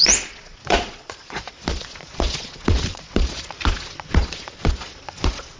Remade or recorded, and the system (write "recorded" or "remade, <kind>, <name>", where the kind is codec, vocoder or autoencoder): remade, vocoder, Vocos